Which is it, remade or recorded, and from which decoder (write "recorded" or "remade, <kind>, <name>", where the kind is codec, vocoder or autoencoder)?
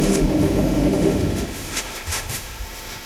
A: remade, autoencoder, DAC-VAE